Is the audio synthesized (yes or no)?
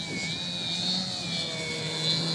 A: no